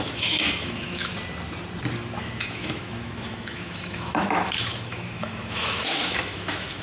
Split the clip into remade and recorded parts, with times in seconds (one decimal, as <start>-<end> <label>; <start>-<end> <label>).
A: 0.0-1.1 remade; 1.1-2.2 recorded; 2.2-6.8 remade